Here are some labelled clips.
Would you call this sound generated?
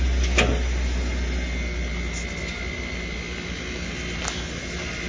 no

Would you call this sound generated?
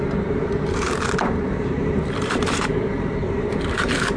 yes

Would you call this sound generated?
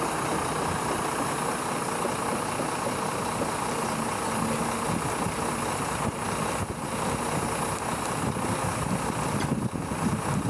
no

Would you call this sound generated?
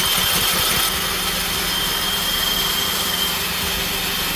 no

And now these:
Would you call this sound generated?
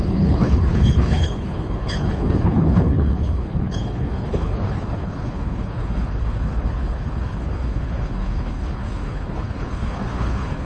yes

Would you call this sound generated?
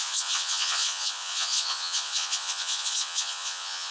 yes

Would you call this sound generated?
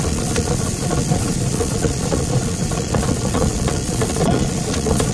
yes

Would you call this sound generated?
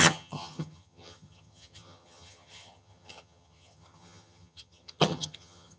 yes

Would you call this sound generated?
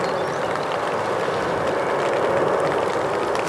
no